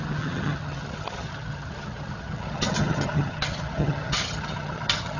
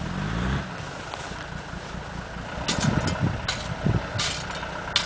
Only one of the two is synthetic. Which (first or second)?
first